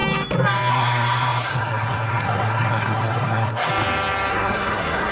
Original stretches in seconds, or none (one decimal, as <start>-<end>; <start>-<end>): 0.0-0.7; 3.7-4.3